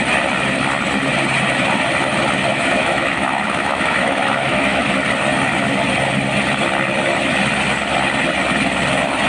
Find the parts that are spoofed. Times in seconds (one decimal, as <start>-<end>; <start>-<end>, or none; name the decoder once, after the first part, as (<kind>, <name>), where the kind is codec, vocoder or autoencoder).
2.5-4.9 (autoencoder, DAC-VAE)